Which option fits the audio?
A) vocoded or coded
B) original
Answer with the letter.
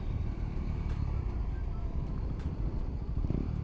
A